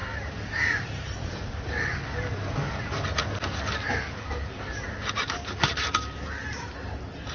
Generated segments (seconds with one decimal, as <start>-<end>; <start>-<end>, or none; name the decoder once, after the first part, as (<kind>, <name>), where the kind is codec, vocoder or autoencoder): none